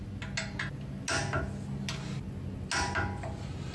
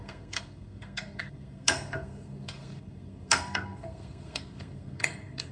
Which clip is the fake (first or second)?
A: second